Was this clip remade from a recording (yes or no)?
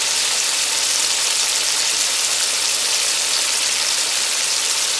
no